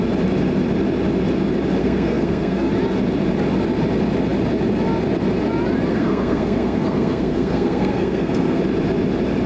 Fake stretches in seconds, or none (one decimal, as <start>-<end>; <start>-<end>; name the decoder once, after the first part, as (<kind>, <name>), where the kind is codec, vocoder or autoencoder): 1.8-2.7 (codec, SNAC); 5.9-8.6